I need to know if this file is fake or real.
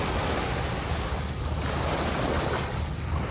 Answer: real